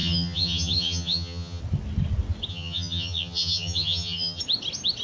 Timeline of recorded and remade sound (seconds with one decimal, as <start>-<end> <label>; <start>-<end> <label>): 0.0-1.6 remade; 1.6-2.5 recorded; 2.5-4.4 remade; 4.4-5.0 recorded